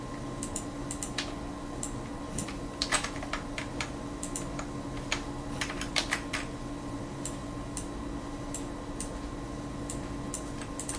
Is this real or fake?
real